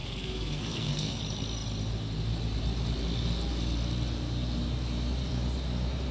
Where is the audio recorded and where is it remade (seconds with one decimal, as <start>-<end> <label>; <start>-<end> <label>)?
0.0-1.2 remade; 1.2-6.1 recorded